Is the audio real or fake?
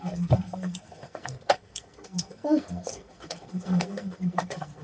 fake